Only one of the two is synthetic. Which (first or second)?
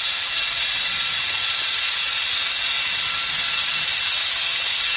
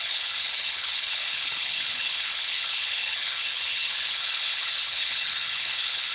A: second